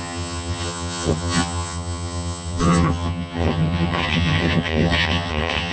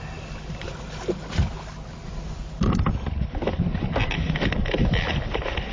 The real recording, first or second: second